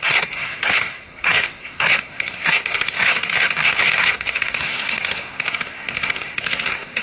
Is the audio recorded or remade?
remade